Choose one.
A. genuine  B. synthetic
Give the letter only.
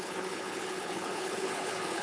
B